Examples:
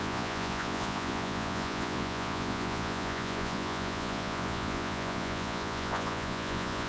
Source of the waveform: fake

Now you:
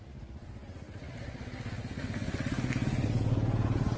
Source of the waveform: real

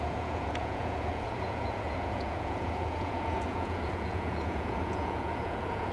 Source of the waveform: fake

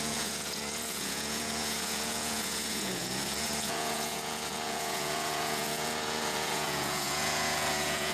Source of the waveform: fake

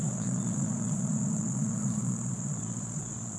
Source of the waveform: fake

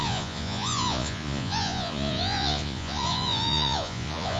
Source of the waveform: fake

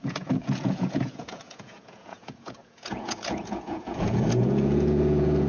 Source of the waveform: fake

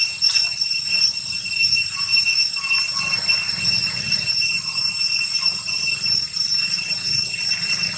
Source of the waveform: real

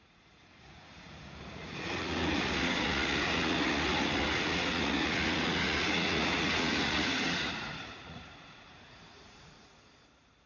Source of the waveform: fake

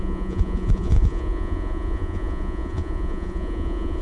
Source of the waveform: fake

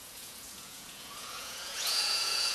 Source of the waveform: fake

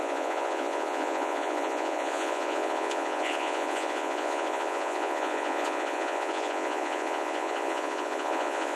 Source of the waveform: fake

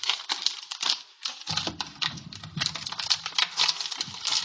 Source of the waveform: real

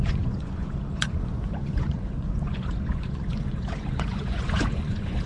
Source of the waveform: fake